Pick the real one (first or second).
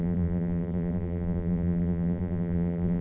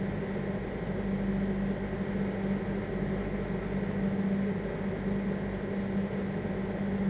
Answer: second